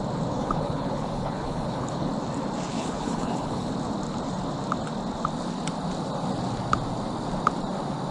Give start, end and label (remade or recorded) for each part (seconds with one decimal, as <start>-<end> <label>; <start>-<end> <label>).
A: 0.0-0.4 recorded; 0.4-2.1 remade; 2.1-2.7 recorded; 2.7-3.7 remade; 3.7-8.1 recorded

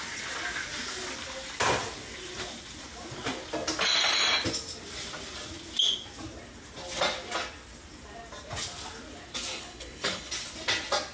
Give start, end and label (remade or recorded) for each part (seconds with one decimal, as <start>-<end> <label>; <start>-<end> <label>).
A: 0.0-9.5 recorded; 9.5-10.3 remade; 10.3-11.1 recorded

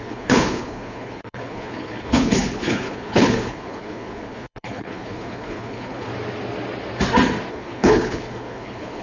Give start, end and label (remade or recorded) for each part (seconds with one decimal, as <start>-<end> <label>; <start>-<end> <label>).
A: 0.0-6.1 remade; 6.1-7.5 recorded; 7.5-9.0 remade

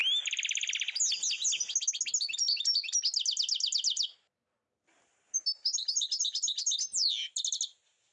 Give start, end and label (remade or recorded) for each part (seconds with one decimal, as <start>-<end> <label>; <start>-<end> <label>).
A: 0.0-8.1 recorded

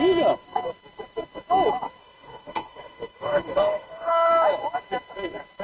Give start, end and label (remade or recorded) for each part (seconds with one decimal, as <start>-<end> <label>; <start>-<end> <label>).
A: 0.0-2.0 recorded; 2.0-4.3 remade; 4.3-5.6 recorded